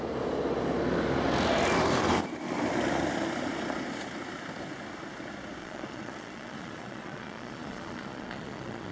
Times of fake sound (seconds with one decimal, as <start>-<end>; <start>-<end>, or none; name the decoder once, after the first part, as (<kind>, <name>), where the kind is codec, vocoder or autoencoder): 5.6-8.9 (vocoder, Vocos)

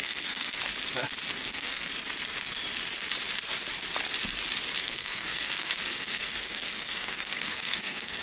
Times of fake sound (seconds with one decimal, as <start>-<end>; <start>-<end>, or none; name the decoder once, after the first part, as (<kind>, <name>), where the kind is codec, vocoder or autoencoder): 0.0-0.6 (codec, SNAC); 1.3-1.9; 4.8-8.2

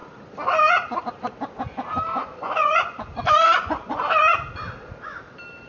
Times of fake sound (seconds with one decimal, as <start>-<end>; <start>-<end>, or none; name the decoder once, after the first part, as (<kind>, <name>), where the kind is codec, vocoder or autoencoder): 2.2-4.0 (vocoder, Vocos)

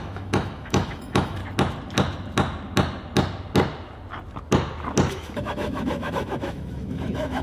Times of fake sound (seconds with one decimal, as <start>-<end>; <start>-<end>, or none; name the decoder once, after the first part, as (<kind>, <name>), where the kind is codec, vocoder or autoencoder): 0.0-1.4 (autoencoder, DAC-VAE); 5.1-7.4